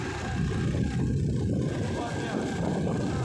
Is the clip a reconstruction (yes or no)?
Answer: no